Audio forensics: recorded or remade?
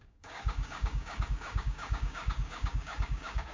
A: remade